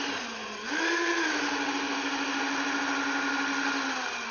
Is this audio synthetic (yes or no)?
no